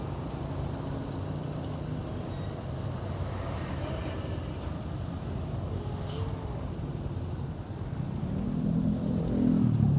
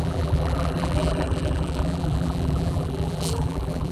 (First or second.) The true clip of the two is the first